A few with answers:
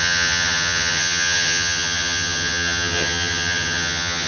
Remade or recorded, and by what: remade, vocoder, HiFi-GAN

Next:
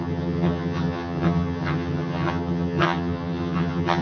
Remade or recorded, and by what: remade, vocoder, HiFi-GAN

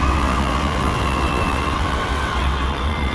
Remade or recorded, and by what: remade, vocoder, WaveNeXt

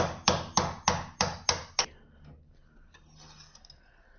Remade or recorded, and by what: recorded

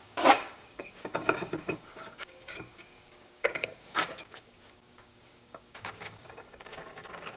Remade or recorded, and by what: remade, codec, DAC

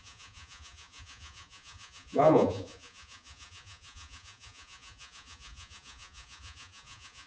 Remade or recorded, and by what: remade, vocoder, Vocos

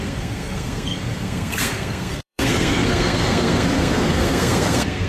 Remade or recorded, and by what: remade, codec, SNAC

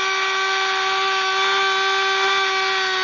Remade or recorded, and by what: recorded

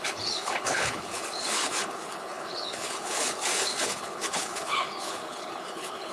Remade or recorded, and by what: remade, codec, HILCodec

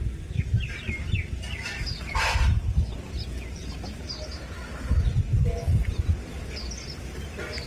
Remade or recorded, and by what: recorded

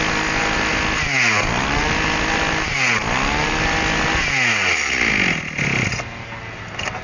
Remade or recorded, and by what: recorded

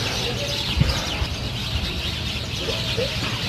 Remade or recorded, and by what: recorded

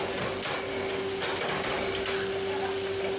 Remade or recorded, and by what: recorded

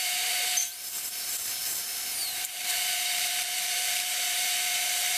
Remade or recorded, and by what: remade, vocoder, BigVGAN v2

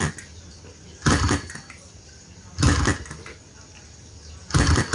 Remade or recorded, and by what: recorded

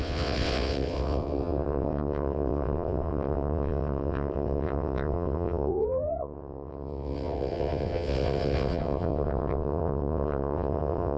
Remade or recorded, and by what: remade, vocoder, WaveNeXt